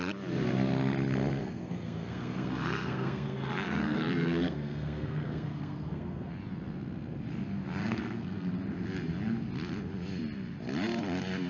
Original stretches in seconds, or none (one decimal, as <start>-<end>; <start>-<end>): 0.0-1.4; 6.3-7.8; 8.5-11.5